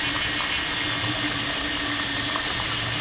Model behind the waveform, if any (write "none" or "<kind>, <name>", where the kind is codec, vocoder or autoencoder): none